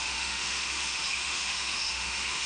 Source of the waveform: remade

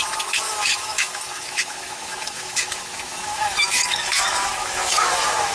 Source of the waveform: remade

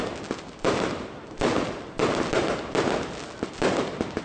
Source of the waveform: recorded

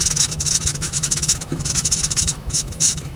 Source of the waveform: remade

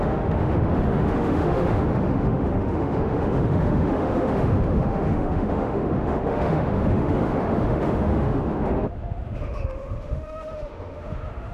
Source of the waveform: remade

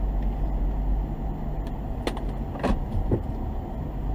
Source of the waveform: recorded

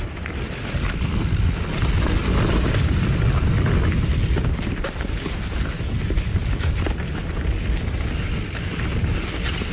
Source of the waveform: recorded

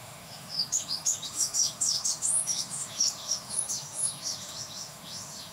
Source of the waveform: remade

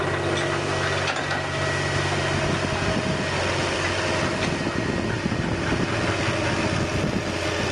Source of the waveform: recorded